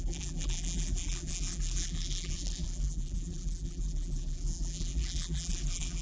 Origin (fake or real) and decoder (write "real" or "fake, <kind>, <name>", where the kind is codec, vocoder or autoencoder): fake, vocoder, BigVGAN v2